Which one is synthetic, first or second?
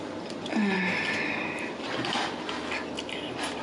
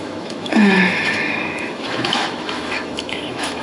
second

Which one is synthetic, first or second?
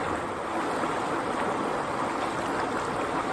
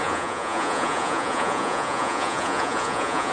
second